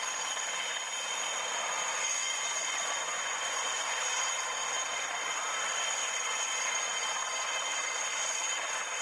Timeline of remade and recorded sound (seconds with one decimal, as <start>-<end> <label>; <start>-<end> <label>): 0.0-2.2 recorded; 2.2-4.0 remade; 4.0-6.0 recorded; 6.0-6.5 remade; 6.5-9.0 recorded